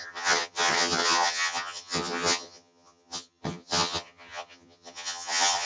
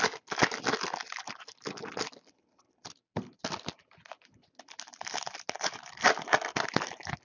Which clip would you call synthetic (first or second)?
first